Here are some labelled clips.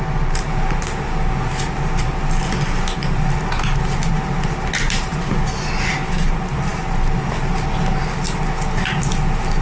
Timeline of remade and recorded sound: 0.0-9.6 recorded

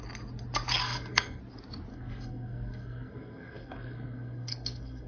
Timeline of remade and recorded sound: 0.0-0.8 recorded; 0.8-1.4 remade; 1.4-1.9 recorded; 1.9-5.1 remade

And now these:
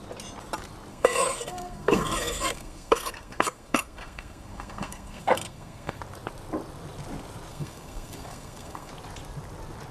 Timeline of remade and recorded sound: 0.0-0.9 recorded; 0.9-6.0 remade; 6.0-7.5 recorded; 7.5-8.9 remade; 8.9-9.9 recorded